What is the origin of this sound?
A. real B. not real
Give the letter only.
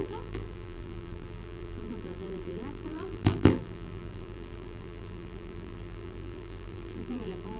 B